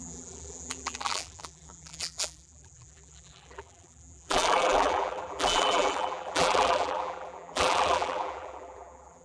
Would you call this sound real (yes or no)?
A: no